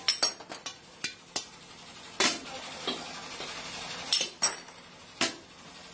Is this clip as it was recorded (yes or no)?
yes